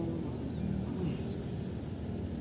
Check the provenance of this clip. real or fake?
real